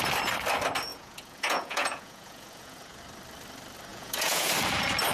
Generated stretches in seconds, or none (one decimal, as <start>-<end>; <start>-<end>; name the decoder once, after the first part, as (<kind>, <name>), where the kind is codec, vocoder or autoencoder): 0.9-3.0 (vocoder, Vocos); 3.9-4.5